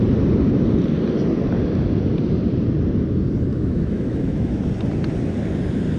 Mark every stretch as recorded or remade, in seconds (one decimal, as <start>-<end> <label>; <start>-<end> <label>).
0.0-3.5 recorded; 3.5-4.6 remade; 4.6-6.0 recorded